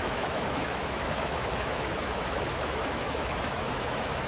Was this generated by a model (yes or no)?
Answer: yes